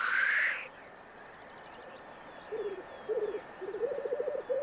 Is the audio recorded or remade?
recorded